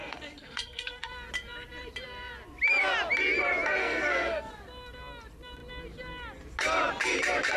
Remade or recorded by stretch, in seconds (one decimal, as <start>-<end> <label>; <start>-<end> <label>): 0.0-1.1 remade; 1.1-3.8 recorded; 3.8-4.5 remade; 4.5-7.6 recorded